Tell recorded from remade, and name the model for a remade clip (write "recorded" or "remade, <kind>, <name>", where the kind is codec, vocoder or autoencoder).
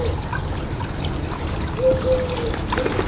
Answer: recorded